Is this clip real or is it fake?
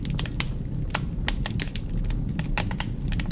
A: real